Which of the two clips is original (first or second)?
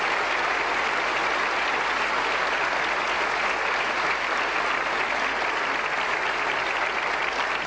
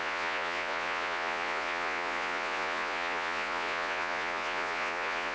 first